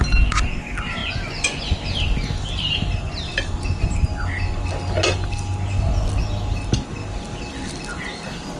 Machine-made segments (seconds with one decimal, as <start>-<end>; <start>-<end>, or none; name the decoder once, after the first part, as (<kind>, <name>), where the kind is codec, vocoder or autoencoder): 1.0-1.8 (vocoder, Vocos)